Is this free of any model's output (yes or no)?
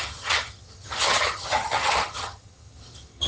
no